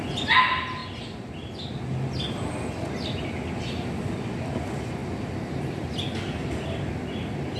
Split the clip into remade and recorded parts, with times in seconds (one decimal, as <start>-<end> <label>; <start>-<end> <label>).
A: 0.0-7.6 recorded